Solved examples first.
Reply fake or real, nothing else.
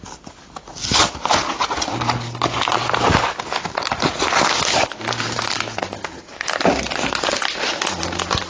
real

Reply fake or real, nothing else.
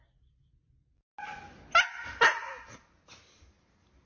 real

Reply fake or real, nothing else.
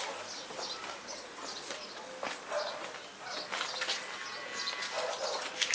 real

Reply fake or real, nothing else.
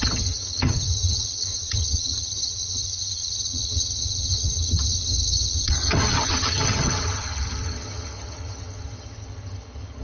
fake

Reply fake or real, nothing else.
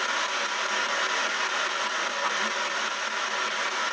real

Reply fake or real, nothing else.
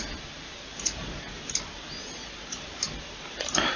real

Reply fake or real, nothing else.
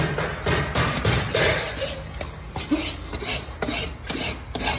real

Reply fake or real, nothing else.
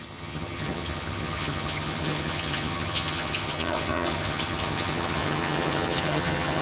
fake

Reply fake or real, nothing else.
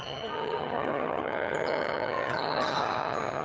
fake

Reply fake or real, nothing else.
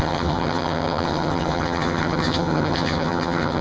fake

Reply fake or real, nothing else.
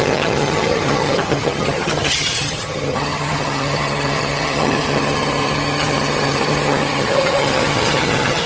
fake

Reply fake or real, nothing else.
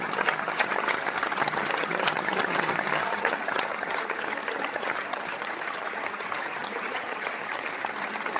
fake